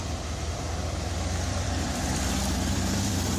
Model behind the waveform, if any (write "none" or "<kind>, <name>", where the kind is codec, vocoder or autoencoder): vocoder, BigVGAN v2